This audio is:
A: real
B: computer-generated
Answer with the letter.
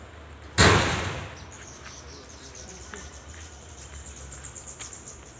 A